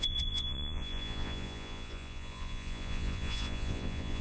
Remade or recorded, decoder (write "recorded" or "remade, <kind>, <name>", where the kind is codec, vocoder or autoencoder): remade, vocoder, Vocos